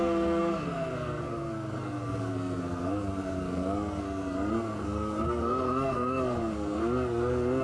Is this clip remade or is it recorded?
remade